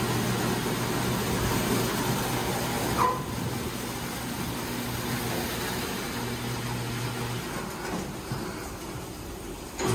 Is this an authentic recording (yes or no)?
yes